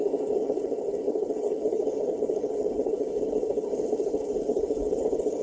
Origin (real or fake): fake